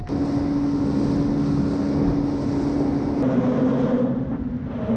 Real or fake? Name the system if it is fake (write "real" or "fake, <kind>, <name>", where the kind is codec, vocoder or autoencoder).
real